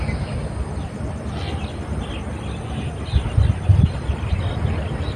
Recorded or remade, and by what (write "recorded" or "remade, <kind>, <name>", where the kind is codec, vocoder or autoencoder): recorded